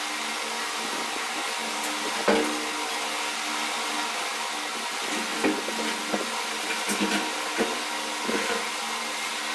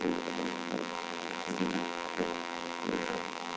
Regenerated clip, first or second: second